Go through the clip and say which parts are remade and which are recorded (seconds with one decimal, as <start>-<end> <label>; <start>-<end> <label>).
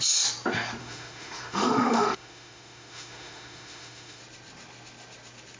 0.0-0.8 recorded; 0.8-4.2 remade; 4.2-5.6 recorded